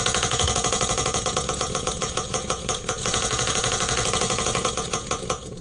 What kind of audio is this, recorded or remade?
remade